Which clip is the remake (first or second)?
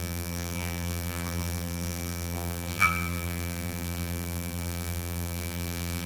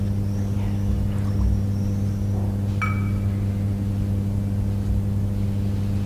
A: first